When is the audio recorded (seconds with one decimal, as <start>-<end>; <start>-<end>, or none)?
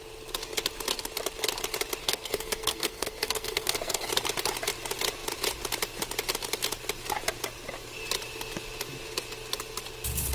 0.0-2.0; 4.1-10.3